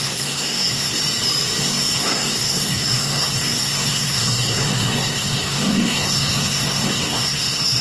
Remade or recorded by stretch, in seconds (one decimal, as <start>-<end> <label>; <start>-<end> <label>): 0.0-1.0 remade; 1.0-1.6 recorded; 1.6-7.8 remade